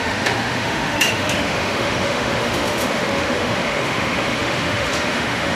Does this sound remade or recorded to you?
remade